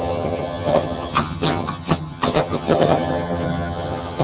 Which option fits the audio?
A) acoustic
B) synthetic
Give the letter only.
B